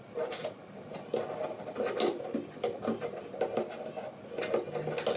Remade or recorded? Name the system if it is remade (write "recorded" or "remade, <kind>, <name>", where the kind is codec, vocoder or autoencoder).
recorded